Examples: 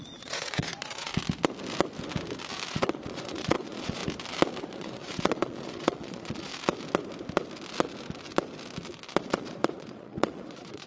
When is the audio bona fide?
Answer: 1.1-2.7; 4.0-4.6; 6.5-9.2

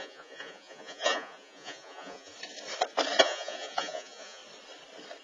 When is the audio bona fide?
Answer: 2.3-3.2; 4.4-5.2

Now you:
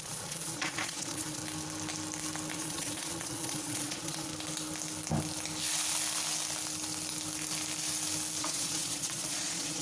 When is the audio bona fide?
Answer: 1.4-2.5; 4.3-8.4

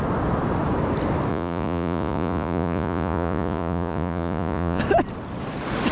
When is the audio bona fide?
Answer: 0.0-1.3; 4.8-5.9